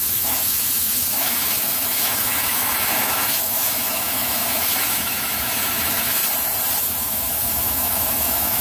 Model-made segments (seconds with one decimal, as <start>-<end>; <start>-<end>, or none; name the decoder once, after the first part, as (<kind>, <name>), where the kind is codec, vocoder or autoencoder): 0.0-6.2 (autoencoder, DAC-VAE); 6.8-8.6